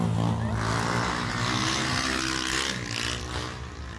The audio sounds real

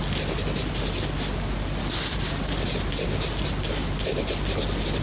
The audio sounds real